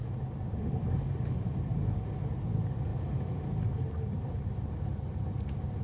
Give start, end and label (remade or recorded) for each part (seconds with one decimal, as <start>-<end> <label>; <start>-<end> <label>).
0.0-2.0 remade; 2.0-5.8 recorded